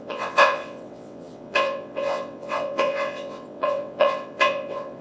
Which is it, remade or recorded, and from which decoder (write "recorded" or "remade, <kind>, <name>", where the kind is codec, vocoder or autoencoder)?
remade, vocoder, WaveNeXt